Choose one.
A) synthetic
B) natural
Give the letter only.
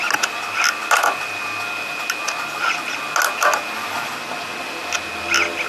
B